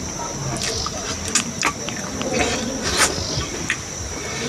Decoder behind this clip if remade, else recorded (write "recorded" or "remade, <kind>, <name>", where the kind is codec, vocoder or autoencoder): recorded